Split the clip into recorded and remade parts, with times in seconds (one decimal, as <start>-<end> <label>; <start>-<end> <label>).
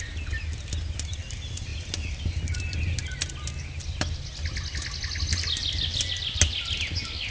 0.0-7.3 recorded